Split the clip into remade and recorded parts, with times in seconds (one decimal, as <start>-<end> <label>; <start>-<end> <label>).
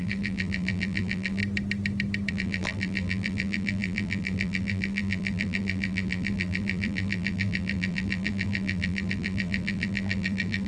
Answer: 0.0-1.4 remade; 1.4-2.3 recorded; 2.3-10.7 remade